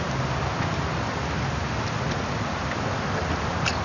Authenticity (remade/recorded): recorded